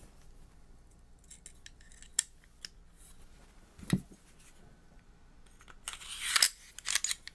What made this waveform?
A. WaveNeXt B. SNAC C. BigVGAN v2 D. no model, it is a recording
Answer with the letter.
D